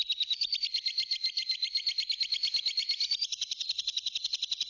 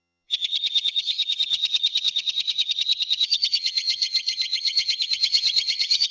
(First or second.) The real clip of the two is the first